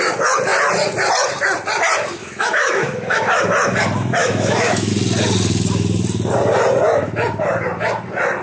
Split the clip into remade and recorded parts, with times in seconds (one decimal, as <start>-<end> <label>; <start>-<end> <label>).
0.0-2.2 recorded; 2.2-3.4 remade; 3.4-4.2 recorded; 4.2-4.9 remade; 4.9-8.4 recorded